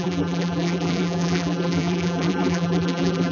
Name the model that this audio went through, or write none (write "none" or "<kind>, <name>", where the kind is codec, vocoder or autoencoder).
vocoder, BigVGAN v2